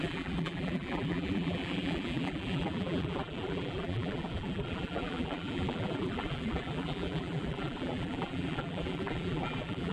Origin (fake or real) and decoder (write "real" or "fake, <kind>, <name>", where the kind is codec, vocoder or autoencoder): fake, vocoder, BigVGAN v2